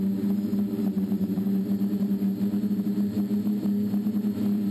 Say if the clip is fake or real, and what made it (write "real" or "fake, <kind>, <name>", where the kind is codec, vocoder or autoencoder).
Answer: fake, vocoder, BigVGAN v2